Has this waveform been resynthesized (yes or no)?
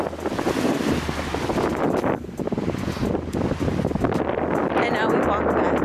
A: no